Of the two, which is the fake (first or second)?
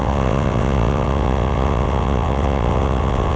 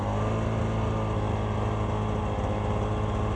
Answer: first